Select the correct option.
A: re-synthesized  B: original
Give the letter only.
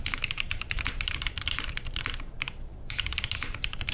A